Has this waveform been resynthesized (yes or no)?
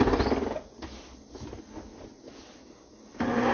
no